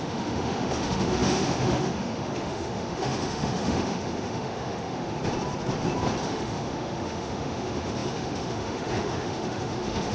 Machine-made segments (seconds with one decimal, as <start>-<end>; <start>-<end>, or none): 0.0-5.2; 6.2-10.1